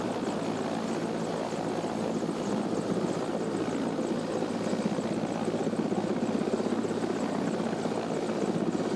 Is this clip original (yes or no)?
yes